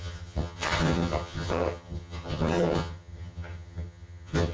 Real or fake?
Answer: fake